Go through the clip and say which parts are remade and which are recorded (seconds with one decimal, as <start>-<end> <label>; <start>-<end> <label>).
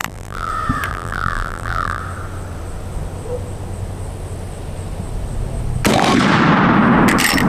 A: 0.0-0.5 remade; 0.5-0.9 recorded; 0.9-2.0 remade; 2.0-7.5 recorded